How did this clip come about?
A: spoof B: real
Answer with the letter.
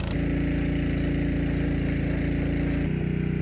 B